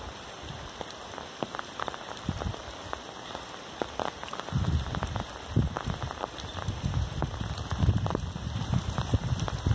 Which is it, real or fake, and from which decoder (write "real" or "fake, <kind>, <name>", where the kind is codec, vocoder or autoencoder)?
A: fake, vocoder, BigVGAN v2